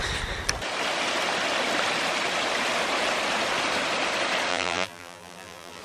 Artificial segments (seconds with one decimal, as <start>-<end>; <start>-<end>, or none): 4.5-5.8